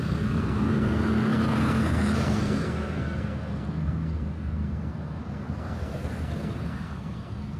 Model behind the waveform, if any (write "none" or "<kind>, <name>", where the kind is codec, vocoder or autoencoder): codec, SNAC